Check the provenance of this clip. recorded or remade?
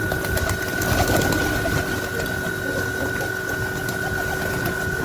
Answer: recorded